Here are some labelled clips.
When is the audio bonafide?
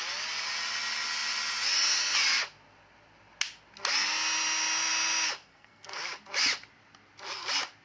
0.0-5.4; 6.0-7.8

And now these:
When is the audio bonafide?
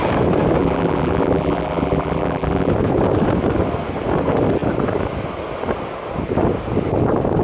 0.0-0.6; 2.7-7.4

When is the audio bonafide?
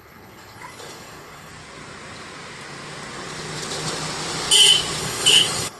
1.5-5.0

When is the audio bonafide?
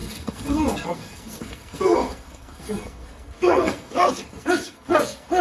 none